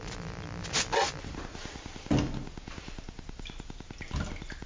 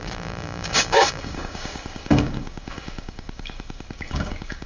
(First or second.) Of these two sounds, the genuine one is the first